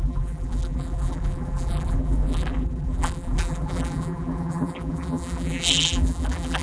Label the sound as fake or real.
fake